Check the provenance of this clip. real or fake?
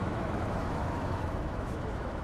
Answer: fake